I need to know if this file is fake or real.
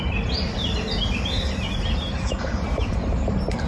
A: fake